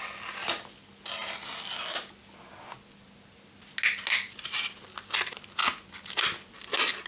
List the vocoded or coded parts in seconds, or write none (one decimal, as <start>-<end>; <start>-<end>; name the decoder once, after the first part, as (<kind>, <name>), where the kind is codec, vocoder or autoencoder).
none